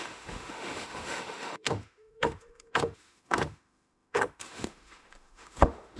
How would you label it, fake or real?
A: fake